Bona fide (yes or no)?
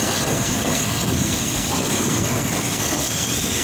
no